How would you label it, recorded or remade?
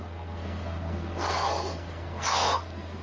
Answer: remade